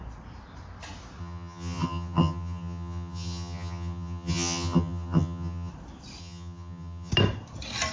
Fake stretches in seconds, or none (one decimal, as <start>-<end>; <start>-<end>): 1.2-5.7; 6.2-7.1